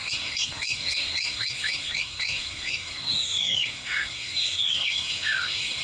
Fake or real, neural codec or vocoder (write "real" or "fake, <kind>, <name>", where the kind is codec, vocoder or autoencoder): fake, codec, SNAC